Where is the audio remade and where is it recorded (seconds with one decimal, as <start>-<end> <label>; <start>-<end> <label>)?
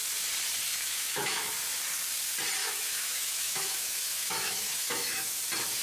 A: 0.0-0.7 recorded; 0.7-1.5 remade; 1.5-2.6 recorded; 2.6-5.3 remade; 5.3-5.8 recorded